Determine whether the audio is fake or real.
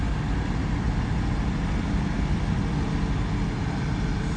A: real